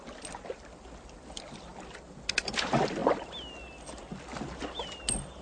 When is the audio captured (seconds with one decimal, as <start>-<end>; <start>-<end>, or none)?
0.0-5.4